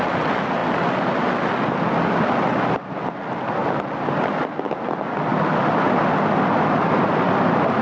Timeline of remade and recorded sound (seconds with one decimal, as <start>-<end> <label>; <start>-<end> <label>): 0.0-7.8 recorded